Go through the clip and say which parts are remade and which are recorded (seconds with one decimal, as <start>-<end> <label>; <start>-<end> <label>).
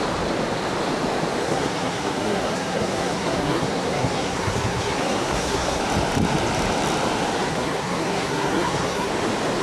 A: 0.0-1.4 recorded; 1.4-5.8 remade; 5.8-7.5 recorded; 7.5-9.1 remade; 9.1-9.6 recorded